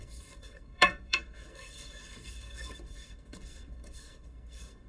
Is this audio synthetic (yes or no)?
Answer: yes